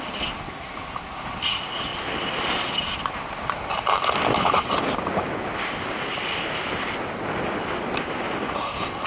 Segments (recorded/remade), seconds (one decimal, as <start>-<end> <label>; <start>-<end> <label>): 0.0-9.1 recorded